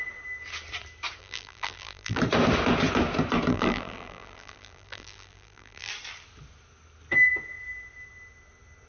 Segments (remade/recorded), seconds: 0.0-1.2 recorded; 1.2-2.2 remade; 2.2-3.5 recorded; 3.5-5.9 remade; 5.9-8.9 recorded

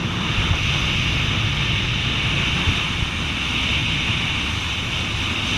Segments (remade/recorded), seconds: 0.0-3.8 recorded; 3.8-4.9 remade; 4.9-5.6 recorded